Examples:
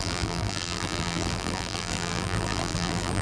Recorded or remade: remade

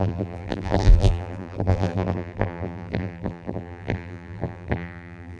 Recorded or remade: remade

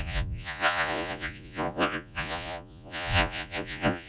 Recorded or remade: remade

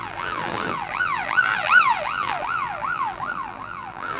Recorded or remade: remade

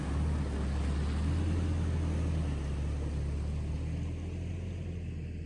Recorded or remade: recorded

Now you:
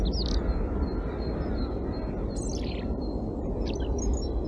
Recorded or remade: recorded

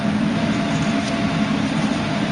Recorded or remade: recorded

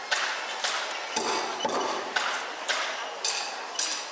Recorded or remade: recorded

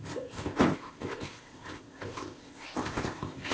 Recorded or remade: remade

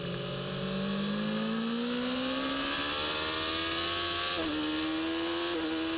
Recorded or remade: recorded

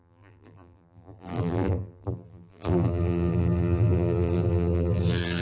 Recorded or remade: remade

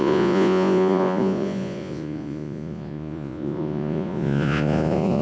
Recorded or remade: remade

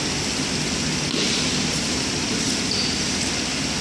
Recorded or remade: recorded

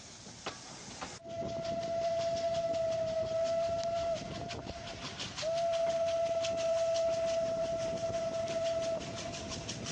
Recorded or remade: recorded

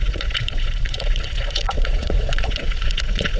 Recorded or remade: remade